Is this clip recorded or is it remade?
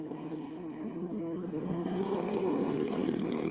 remade